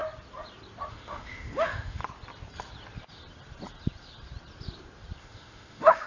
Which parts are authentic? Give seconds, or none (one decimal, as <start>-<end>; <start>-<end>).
0.0-0.9; 2.0-5.2